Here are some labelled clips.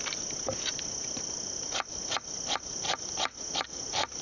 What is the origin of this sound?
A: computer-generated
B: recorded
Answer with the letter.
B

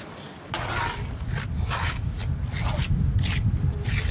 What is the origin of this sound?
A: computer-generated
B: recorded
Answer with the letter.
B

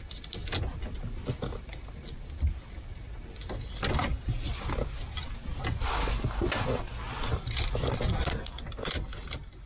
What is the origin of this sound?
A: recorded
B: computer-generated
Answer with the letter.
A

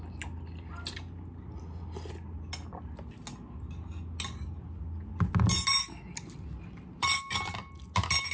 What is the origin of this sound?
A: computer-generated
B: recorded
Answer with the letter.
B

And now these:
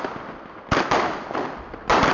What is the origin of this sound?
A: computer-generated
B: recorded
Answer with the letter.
B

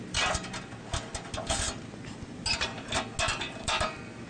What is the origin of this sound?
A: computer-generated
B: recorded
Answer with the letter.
B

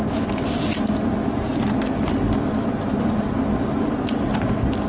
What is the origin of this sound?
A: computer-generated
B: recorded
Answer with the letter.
B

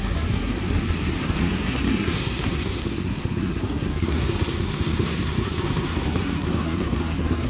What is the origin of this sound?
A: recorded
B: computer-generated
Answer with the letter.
B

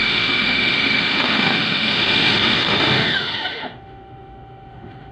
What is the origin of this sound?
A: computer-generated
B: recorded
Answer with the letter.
A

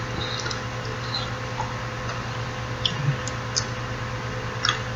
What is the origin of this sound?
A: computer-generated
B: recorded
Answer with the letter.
B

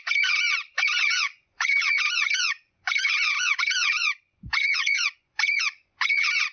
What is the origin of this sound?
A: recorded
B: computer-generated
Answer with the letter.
B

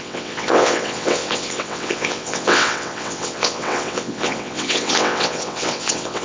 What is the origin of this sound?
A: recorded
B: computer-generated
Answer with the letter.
B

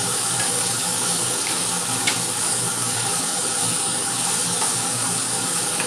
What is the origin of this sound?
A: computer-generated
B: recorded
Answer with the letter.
A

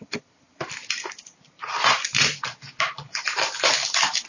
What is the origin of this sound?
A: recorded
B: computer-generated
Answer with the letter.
A